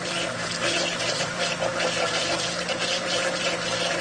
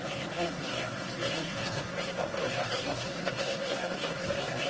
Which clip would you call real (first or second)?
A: first